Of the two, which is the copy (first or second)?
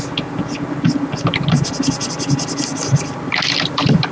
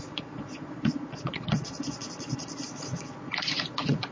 second